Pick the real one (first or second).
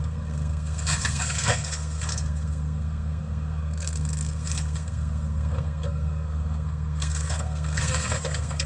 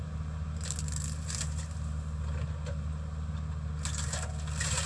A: second